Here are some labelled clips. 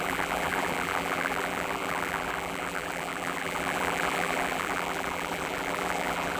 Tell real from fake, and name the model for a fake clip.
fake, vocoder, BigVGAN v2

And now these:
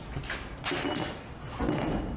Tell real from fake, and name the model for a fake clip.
real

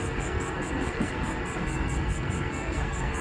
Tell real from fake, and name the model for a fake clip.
fake, codec, SNAC